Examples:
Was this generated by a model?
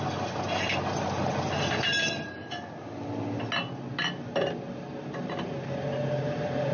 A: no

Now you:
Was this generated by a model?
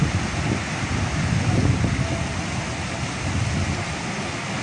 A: no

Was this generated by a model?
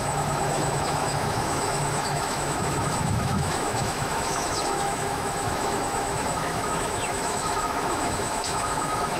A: yes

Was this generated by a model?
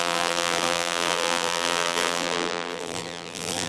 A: yes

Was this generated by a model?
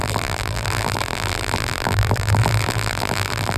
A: yes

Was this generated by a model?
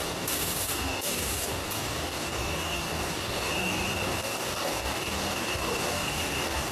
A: yes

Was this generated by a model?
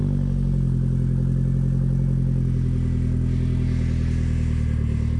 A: no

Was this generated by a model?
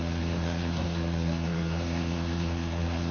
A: yes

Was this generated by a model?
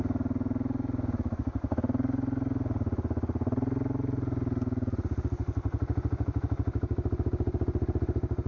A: no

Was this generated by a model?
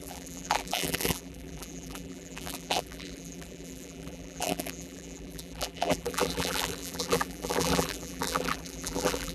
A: yes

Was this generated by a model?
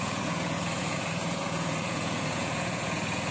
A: yes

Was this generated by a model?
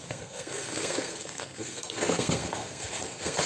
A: yes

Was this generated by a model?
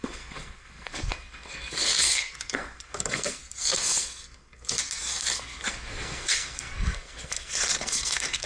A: yes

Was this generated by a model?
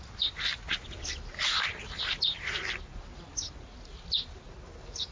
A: no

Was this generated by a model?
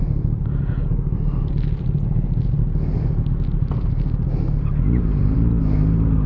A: no